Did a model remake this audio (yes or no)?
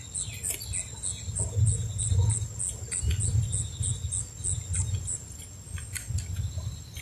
no